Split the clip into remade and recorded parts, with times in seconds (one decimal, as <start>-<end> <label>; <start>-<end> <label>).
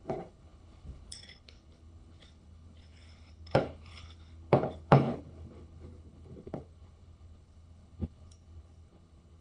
0.0-9.4 remade